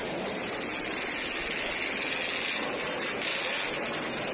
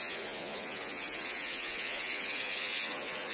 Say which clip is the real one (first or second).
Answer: first